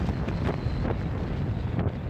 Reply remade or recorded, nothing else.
recorded